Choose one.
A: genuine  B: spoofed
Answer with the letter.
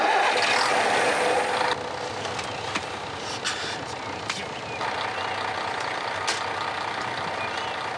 A